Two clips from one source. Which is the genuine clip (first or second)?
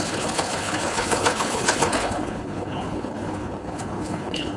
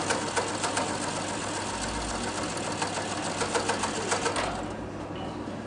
second